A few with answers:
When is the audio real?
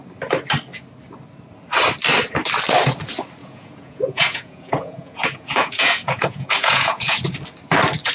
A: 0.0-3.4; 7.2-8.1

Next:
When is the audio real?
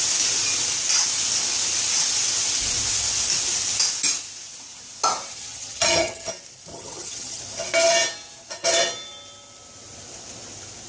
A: 0.0-5.3; 6.3-6.7; 7.4-10.9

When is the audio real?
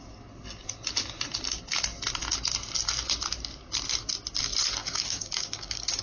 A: 0.0-4.8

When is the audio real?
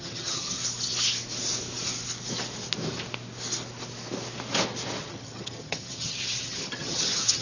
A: 0.6-5.0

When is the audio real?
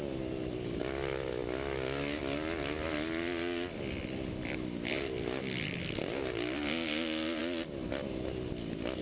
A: 0.0-9.0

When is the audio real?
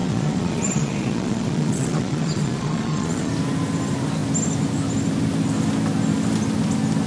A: 3.3-7.1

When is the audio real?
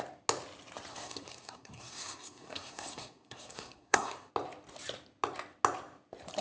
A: 0.0-0.9; 4.3-6.4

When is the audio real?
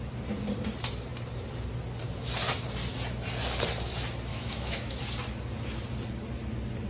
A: 0.0-4.3; 5.0-6.9